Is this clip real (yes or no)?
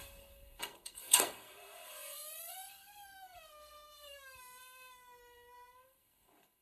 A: no